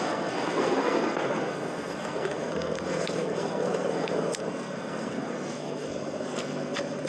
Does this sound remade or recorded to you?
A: remade